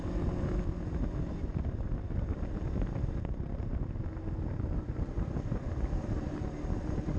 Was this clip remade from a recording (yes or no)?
no